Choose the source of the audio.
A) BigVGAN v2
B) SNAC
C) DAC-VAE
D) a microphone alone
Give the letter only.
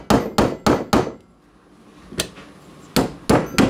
D